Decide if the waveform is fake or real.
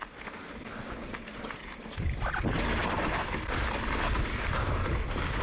real